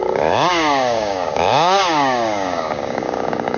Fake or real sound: fake